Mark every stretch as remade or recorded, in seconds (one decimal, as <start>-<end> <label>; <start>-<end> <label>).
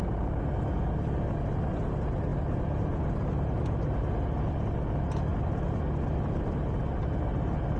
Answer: 0.0-7.8 recorded